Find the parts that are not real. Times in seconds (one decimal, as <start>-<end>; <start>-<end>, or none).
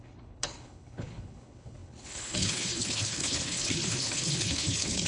0.0-5.1